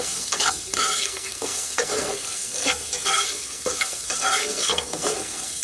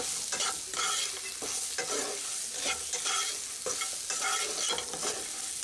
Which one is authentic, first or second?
second